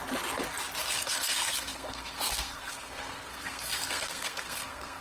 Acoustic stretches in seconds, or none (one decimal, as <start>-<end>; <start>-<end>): 0.0-0.8

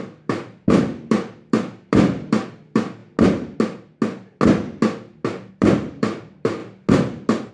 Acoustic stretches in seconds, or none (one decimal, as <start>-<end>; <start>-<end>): 3.0-5.5; 6.6-7.5

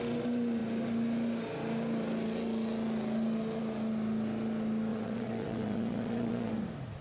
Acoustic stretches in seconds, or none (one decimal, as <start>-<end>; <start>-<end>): 0.0-4.9; 6.5-7.0

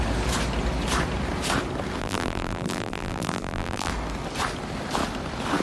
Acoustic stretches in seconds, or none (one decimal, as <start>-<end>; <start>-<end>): 0.0-2.0; 3.9-5.6

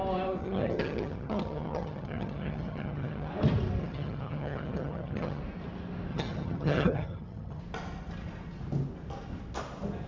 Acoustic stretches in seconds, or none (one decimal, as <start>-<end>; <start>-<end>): 0.0-0.4; 3.3-3.8; 5.4-6.1; 7.6-10.1

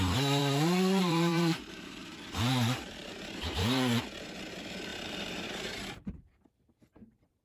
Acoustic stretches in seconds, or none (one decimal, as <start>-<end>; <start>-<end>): 0.0-0.4; 4.0-4.9

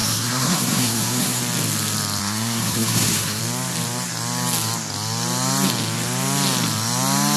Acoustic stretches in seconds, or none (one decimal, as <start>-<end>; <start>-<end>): 1.4-2.2; 3.4-7.4